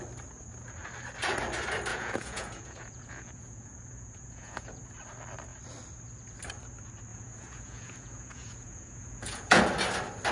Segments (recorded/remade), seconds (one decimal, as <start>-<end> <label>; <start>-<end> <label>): 0.0-1.9 recorded; 1.9-4.8 remade; 4.8-7.1 recorded; 7.1-9.6 remade; 9.6-10.3 recorded